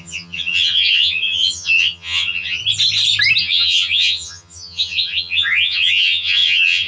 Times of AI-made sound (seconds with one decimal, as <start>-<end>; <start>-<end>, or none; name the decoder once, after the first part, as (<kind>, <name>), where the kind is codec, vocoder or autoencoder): 0.0-2.6 (vocoder, HiFi-GAN); 3.4-6.9